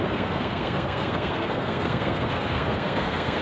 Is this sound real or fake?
fake